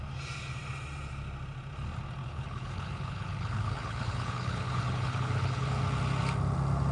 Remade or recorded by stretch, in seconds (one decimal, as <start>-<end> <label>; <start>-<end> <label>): 0.0-2.2 recorded; 2.2-5.8 remade; 5.8-6.9 recorded